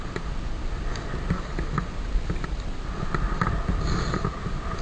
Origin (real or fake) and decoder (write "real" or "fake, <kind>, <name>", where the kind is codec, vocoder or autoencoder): real